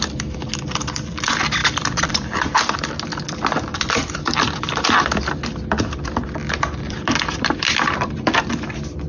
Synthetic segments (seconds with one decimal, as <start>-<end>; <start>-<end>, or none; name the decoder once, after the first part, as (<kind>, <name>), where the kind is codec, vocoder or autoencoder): 1.6-2.6 (vocoder, BigVGAN v2); 3.7-8.4

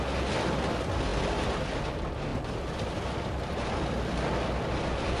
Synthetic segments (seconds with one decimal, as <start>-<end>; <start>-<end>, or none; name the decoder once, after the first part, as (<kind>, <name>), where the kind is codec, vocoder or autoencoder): none

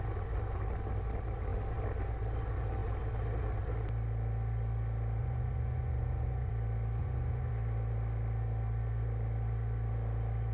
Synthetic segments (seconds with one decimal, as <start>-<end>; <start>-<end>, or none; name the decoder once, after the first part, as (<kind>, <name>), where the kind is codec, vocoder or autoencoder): 5.2-6.5 (vocoder, Vocos); 7.0-7.5

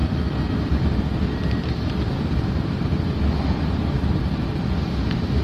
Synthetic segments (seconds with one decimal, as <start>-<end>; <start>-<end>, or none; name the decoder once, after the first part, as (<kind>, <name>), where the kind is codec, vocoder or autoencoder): none

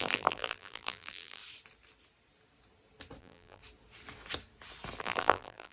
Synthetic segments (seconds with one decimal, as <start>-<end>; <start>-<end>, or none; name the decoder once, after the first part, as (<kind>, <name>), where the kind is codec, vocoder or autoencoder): 0.0-1.4 (vocoder, BigVGAN v2); 3.2-3.6; 5.0-5.7

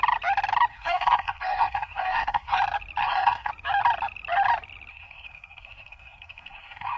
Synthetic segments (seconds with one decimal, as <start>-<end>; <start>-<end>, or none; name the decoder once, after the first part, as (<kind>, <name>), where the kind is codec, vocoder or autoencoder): 0.7-2.6 (codec, SNAC); 3.0-3.5; 4.9-7.0

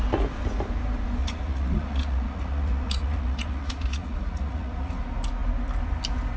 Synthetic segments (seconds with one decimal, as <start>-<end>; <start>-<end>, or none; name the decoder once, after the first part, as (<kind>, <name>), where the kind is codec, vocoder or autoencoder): 1.2-5.0 (vocoder, Vocos)